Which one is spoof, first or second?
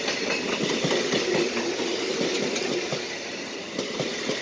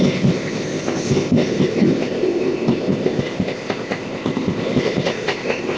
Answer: second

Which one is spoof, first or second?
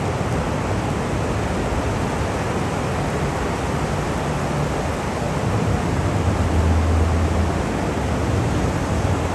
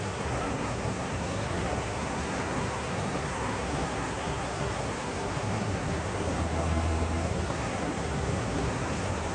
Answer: second